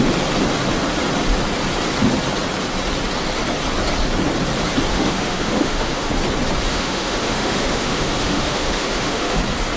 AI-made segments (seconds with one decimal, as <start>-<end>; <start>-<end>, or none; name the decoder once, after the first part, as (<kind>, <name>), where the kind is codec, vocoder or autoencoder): 4.9-6.1 (autoencoder, DAC-VAE); 6.7-9.4

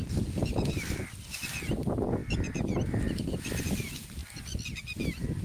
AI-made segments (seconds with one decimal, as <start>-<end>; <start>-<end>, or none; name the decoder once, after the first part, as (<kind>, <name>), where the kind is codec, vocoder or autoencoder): none

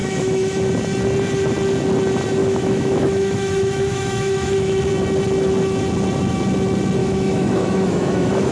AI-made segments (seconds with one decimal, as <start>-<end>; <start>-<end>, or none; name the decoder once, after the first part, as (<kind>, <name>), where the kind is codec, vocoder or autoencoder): 0.0-0.7 (autoencoder, DAC-VAE); 2.4-4.8; 7.0-8.5

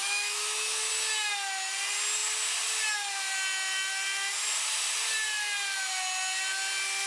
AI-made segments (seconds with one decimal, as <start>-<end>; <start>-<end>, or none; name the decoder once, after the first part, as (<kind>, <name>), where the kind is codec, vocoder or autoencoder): 0.0-0.9 (autoencoder, DAC-VAE)

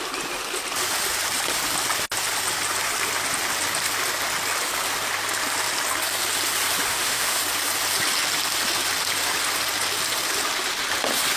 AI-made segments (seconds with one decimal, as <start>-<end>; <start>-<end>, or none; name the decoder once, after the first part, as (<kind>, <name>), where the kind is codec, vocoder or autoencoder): 6.9-7.4 (autoencoder, DAC-VAE)

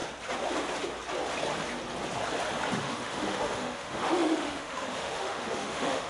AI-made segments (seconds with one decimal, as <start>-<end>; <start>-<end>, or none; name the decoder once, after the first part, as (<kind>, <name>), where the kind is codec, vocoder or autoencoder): 2.8-6.1 (autoencoder, DAC-VAE)

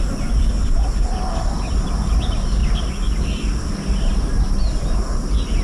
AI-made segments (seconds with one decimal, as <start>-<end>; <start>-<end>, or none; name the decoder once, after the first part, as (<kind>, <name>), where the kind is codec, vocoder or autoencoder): none

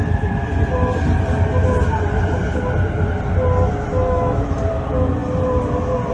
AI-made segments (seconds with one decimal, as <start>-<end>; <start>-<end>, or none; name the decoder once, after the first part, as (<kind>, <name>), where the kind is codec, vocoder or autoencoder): 3.9-4.6 (autoencoder, DAC-VAE)